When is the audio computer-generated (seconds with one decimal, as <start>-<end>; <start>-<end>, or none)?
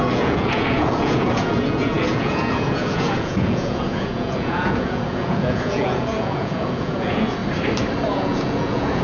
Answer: 0.0-7.4; 8.1-9.0